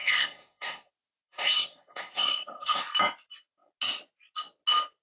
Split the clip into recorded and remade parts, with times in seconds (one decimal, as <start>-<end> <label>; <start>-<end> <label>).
0.0-0.9 remade; 0.9-1.3 recorded; 1.3-2.8 remade; 2.8-5.0 recorded